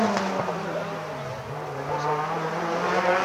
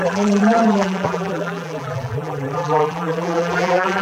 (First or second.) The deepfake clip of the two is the second